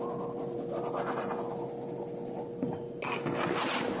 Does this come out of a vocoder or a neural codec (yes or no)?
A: no